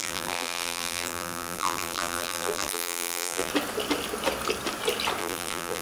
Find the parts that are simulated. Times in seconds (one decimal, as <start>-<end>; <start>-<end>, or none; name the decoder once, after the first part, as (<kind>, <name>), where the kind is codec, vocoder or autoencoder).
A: 0.0-3.5 (vocoder, BigVGAN v2); 5.2-5.8